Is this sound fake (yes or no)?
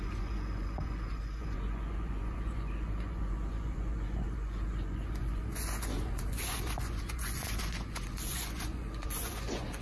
yes